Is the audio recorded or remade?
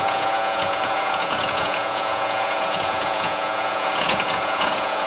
remade